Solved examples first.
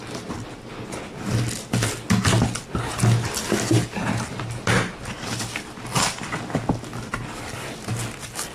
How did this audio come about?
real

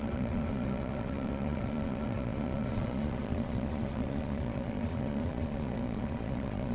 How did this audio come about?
fake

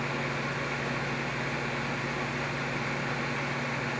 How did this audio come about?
real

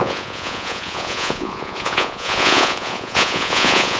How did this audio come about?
fake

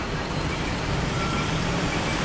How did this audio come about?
fake